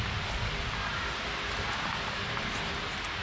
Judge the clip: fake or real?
real